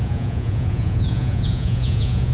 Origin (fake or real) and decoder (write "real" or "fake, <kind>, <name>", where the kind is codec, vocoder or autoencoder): fake, vocoder, Vocos